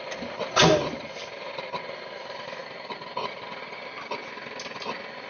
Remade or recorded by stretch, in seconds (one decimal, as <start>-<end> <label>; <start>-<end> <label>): 0.0-5.3 recorded